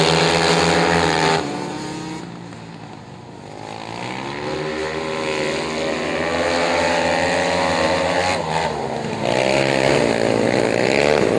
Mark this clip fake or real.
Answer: real